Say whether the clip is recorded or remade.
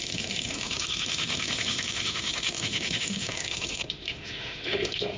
remade